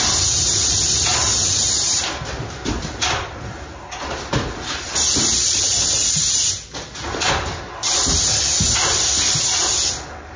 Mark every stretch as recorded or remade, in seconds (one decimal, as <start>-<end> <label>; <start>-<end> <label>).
0.0-10.4 recorded